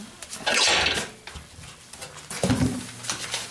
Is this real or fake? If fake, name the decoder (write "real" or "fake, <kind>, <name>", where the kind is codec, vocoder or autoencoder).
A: real